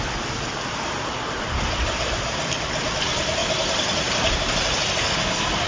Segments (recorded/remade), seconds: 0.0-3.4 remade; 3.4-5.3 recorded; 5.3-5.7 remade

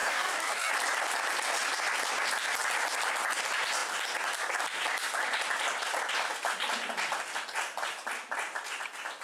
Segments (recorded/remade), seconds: 0.0-0.7 remade; 0.7-9.2 recorded

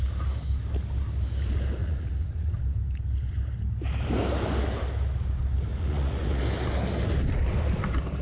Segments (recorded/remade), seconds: 0.0-1.8 recorded; 1.8-2.6 remade; 2.6-5.7 recorded; 5.7-6.4 remade; 6.4-8.2 recorded

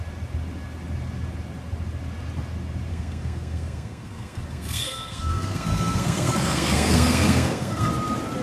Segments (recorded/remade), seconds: 0.0-2.9 recorded; 2.9-7.9 remade; 7.9-8.4 recorded

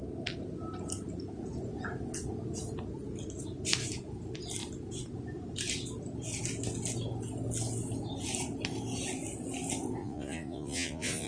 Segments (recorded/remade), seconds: 0.0-10.0 recorded; 10.0-11.3 remade